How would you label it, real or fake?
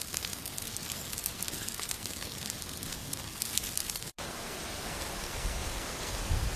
fake